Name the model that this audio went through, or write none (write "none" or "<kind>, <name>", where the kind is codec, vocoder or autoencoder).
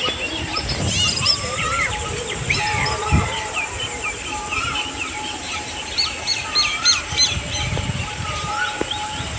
vocoder, BigVGAN v2